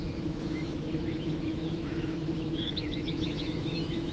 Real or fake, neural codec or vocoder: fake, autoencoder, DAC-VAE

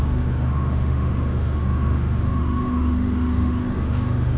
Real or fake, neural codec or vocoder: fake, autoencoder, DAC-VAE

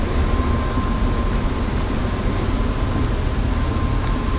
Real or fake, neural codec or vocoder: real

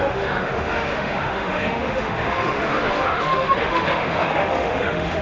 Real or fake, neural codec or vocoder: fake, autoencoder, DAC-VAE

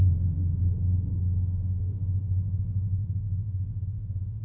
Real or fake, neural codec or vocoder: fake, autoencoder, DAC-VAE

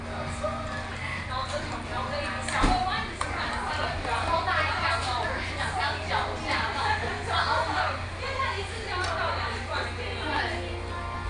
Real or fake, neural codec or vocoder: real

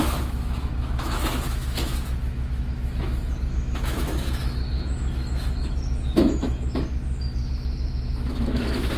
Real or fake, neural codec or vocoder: fake, autoencoder, DAC-VAE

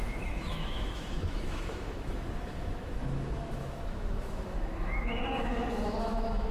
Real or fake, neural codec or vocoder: fake, autoencoder, DAC-VAE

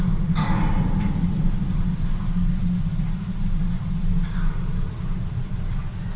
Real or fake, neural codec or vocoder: real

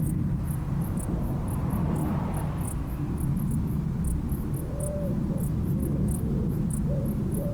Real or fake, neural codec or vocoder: real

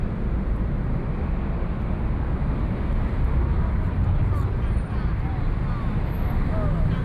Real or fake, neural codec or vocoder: real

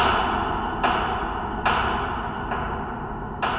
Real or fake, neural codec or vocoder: real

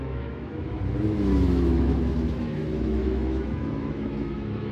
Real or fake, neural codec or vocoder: fake, autoencoder, DAC-VAE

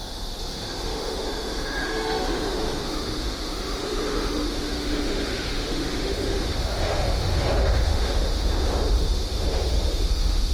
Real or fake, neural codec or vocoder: fake, autoencoder, DAC-VAE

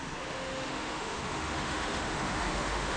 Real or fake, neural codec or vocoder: fake, autoencoder, DAC-VAE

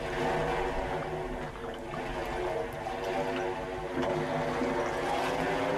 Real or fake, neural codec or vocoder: real